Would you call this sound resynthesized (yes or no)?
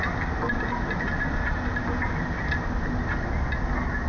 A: no